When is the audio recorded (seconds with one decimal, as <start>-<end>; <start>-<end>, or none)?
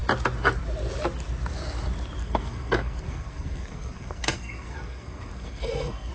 0.0-2.2